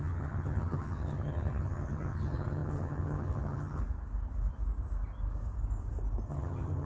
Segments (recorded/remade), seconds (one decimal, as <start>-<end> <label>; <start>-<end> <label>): 0.0-3.8 remade; 3.8-6.3 recorded; 6.3-6.8 remade